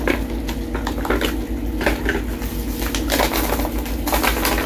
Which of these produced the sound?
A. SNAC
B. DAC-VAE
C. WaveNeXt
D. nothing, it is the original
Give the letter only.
D